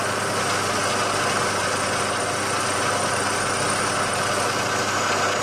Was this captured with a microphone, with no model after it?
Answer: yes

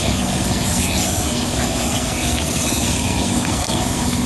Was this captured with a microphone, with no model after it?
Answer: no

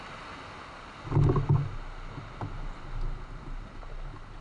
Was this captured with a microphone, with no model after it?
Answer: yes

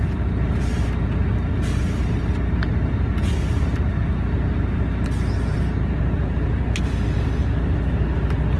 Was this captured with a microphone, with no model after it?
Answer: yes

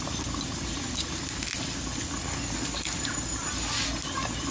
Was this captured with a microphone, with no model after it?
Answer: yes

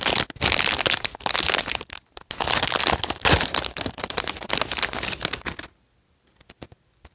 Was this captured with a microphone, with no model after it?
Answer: yes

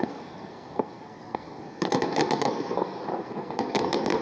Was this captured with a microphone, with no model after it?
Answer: no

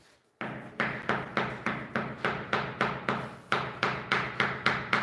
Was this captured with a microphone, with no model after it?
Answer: yes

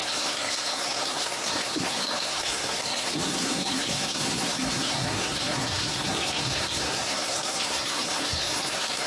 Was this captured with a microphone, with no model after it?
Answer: no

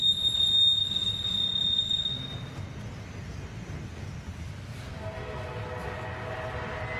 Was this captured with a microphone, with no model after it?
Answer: yes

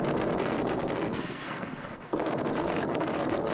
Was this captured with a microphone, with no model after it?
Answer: no